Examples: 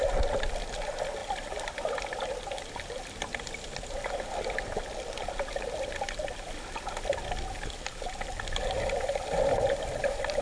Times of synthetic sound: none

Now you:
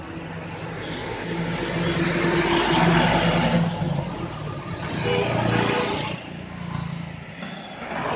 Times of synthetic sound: 1.0-1.6

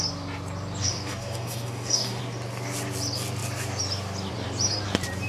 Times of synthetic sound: 0.8-2.2

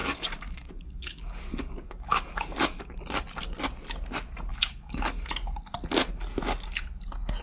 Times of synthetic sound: 0.0-2.8; 4.5-5.3

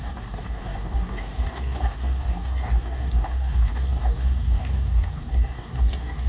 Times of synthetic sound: 0.0-6.3